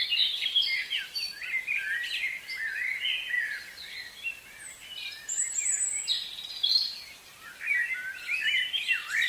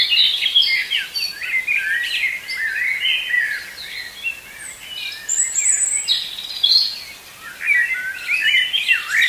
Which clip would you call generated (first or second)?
first